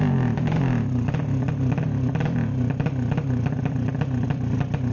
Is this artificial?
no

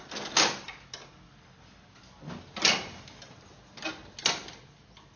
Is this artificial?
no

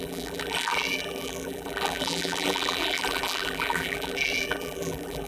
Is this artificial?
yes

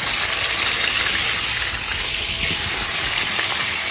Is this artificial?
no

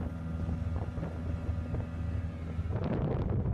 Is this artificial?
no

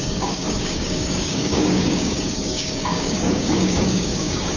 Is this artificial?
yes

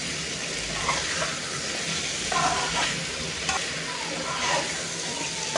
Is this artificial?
no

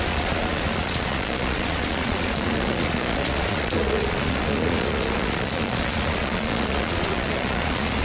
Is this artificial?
yes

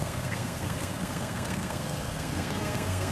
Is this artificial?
yes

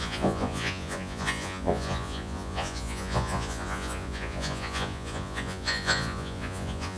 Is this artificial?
yes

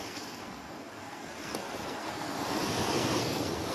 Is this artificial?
yes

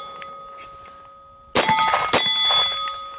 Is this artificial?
no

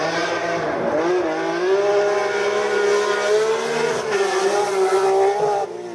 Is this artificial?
no